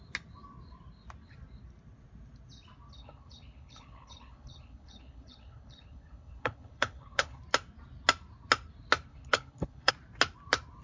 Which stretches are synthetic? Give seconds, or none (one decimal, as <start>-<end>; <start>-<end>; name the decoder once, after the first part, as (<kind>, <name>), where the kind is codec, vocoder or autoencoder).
2.9-7.4 (codec, HILCodec); 9.1-9.9